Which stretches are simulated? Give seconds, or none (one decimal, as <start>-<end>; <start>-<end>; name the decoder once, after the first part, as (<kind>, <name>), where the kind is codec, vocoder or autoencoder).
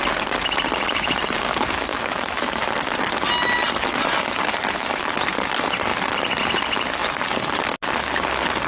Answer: 1.9-2.6 (autoencoder, DAC-VAE)